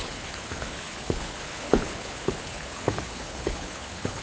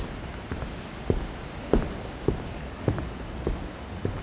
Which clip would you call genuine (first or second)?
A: second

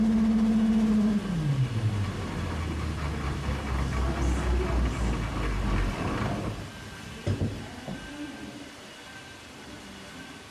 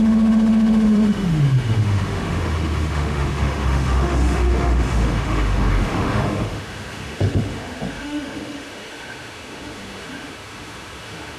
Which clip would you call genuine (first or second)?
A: first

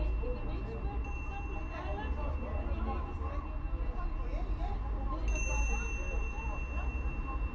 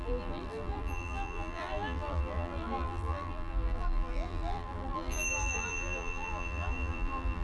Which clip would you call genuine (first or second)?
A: first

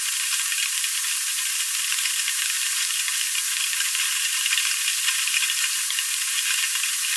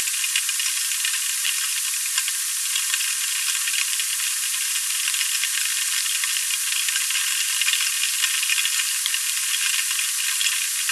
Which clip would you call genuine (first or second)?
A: second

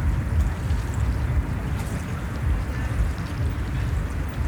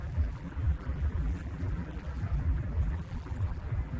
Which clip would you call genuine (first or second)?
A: first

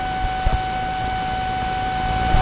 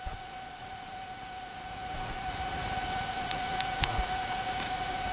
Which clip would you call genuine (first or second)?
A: first